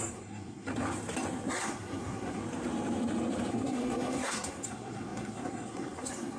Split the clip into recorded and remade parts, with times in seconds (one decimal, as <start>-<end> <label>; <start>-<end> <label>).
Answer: 0.0-0.7 remade; 0.7-1.6 recorded; 1.6-2.4 remade; 2.4-3.5 recorded; 3.5-6.4 remade